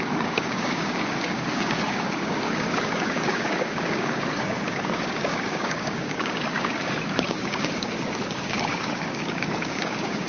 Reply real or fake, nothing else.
fake